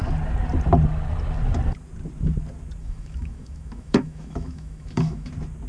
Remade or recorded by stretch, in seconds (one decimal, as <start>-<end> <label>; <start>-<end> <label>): 0.0-2.8 recorded; 2.8-5.3 remade; 5.3-5.7 recorded